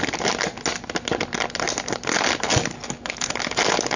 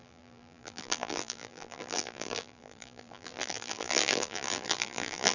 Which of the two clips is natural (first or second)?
first